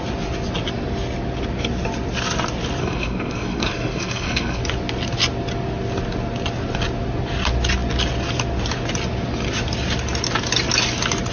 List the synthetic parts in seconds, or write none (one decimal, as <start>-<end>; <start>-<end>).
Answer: 2.8-4.6